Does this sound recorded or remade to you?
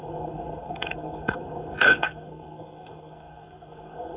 remade